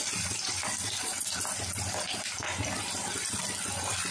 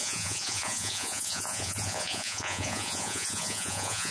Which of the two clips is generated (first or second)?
second